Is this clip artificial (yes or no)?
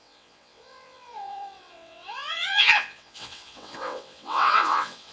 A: yes